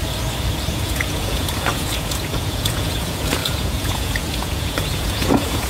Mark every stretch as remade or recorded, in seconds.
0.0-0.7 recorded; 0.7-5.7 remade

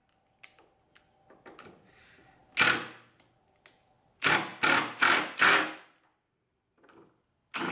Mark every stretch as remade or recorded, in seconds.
0.0-7.7 recorded

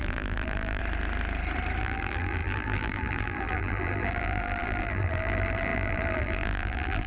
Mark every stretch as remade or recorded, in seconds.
0.0-0.8 remade; 0.8-1.8 recorded; 1.8-7.1 remade

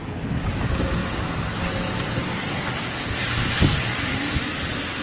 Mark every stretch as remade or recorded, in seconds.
0.0-1.0 recorded; 1.0-1.9 remade; 1.9-5.0 recorded

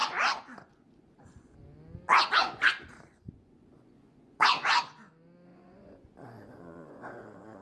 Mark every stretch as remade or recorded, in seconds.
0.0-1.6 remade; 1.6-2.1 recorded; 2.1-5.1 remade; 5.1-5.5 recorded; 5.5-7.6 remade